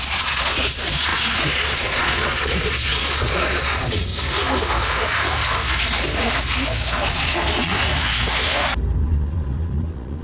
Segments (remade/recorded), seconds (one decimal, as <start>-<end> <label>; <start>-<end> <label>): 0.0-4.1 remade; 4.1-7.1 recorded; 7.1-7.7 remade; 7.7-9.0 recorded; 9.0-10.2 remade